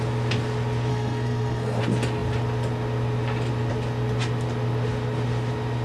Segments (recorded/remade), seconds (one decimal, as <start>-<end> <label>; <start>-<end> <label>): 0.0-0.9 recorded; 0.9-1.8 remade; 1.8-5.8 recorded